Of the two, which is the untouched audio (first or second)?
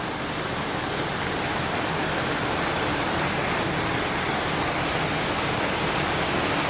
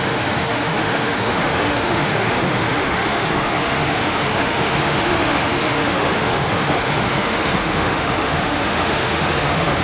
first